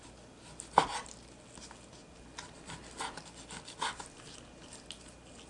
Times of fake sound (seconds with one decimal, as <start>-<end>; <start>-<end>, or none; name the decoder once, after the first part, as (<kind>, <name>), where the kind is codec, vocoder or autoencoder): none